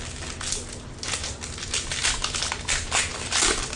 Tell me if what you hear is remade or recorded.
recorded